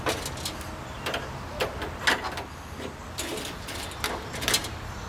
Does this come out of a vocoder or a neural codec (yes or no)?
no